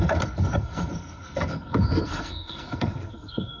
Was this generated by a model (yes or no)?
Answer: yes